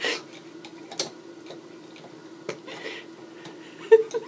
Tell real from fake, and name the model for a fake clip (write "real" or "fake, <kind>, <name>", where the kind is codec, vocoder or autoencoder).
real